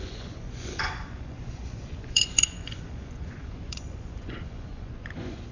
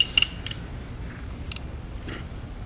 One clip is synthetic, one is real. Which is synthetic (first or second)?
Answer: first